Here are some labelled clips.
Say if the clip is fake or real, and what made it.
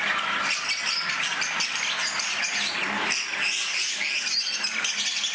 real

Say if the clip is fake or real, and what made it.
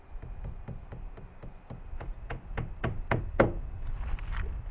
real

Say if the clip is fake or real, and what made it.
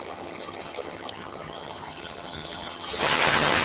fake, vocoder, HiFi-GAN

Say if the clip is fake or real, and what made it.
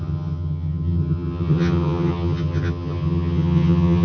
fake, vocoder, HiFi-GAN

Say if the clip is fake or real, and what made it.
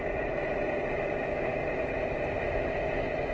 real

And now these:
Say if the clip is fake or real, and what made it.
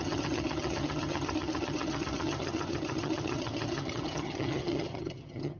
fake, vocoder, HiFi-GAN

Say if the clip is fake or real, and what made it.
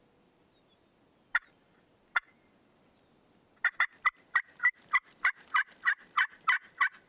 real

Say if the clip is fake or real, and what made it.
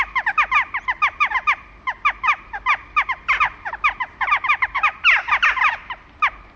real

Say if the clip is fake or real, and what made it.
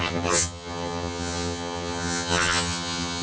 fake, vocoder, HiFi-GAN